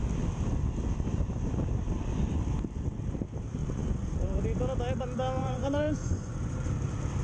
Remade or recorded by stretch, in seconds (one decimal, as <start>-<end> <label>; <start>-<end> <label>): 0.0-3.6 recorded; 3.6-4.4 remade; 4.4-5.4 recorded; 5.4-6.7 remade; 6.7-7.2 recorded

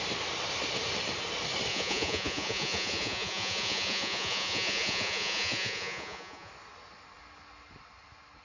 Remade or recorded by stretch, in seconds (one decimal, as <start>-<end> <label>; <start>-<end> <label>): 0.0-1.7 recorded; 1.7-6.5 remade; 6.5-8.4 recorded

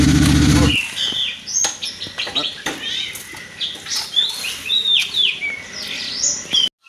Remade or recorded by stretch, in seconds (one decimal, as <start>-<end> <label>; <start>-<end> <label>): 0.0-6.9 recorded

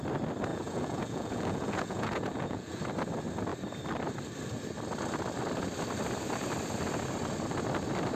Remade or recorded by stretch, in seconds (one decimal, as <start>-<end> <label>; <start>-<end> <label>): 0.0-0.5 recorded; 0.5-2.8 remade; 2.8-8.1 recorded

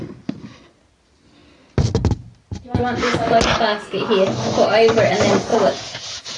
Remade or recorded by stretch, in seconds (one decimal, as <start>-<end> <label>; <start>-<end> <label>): 0.0-5.5 recorded; 5.5-6.4 remade